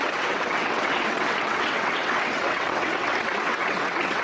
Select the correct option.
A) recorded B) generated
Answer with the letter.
B